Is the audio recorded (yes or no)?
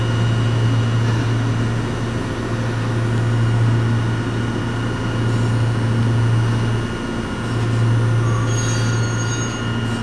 yes